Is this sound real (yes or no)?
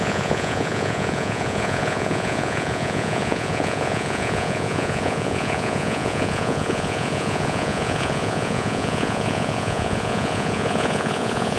no